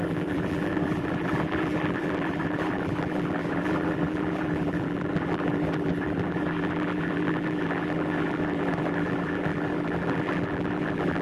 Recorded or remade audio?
remade